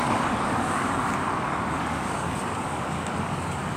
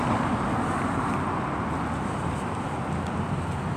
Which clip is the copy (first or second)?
first